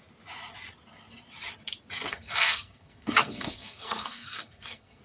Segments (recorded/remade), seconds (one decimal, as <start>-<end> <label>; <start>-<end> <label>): 0.0-2.1 recorded; 2.1-5.0 remade